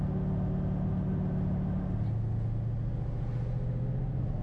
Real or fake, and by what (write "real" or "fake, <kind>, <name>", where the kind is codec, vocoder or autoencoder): real